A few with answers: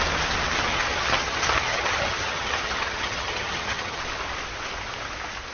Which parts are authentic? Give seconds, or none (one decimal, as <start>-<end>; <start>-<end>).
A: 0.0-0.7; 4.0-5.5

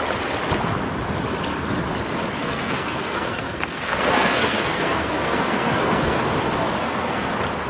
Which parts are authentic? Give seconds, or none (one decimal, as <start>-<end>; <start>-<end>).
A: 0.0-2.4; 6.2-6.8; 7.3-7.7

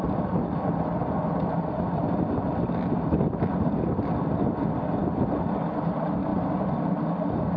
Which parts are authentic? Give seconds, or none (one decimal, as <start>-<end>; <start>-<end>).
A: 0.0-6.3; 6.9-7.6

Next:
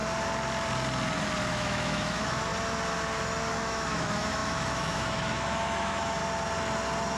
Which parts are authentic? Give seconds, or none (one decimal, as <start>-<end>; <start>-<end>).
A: 0.0-1.5; 2.5-3.5; 6.2-7.2

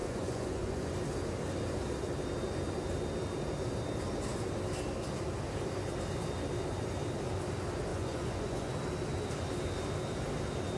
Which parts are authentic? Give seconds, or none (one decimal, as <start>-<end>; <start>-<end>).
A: 0.9-7.9; 8.7-10.8

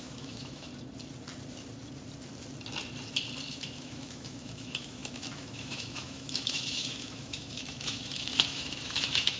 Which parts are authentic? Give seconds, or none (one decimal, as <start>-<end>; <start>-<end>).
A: 0.7-3.5

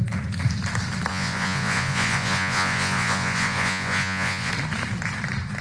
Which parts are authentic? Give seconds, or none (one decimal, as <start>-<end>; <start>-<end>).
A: 0.0-1.1; 4.5-5.6

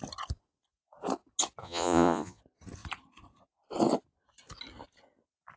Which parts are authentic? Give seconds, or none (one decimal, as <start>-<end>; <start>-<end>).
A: 0.0-1.6; 2.4-5.6